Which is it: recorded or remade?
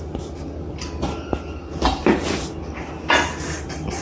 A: recorded